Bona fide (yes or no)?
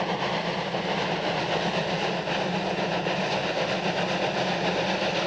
yes